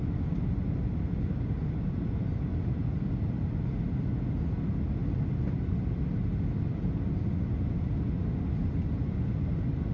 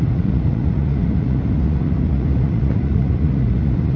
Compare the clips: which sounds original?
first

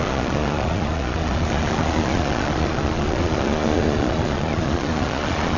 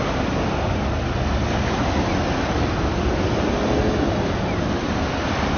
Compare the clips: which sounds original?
second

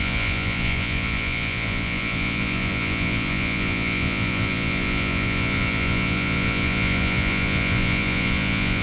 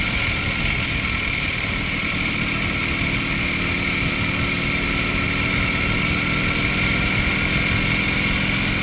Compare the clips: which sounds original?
second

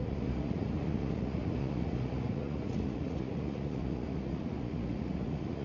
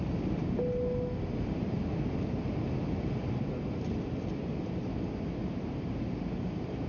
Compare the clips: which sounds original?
second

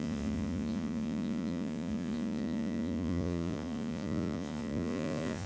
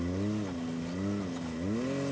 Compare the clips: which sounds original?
second